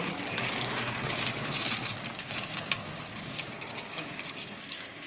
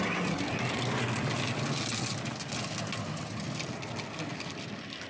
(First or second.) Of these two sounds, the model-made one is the first